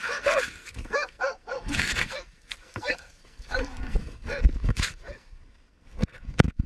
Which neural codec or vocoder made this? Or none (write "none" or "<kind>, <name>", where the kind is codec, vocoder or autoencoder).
codec, SNAC